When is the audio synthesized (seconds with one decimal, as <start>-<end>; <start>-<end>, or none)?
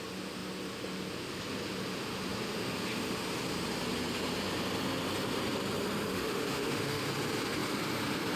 6.1-7.0